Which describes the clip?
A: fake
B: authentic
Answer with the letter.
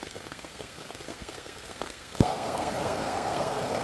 A